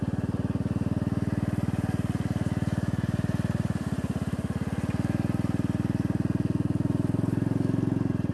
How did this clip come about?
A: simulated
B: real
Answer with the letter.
B